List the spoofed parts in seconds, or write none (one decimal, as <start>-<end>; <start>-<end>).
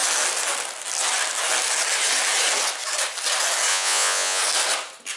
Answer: 3.7-4.4